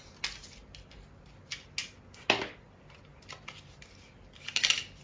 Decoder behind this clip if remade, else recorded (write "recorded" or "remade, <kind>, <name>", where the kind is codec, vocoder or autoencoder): recorded